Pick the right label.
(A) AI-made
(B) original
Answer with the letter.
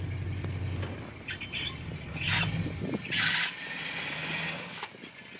B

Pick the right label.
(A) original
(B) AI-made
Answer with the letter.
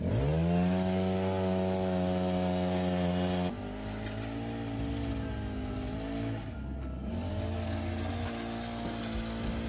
A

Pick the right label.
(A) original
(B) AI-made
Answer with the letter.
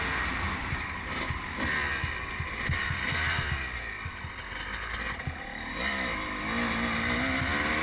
A